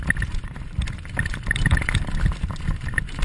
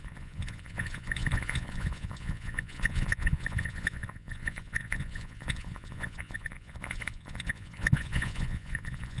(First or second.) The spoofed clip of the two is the second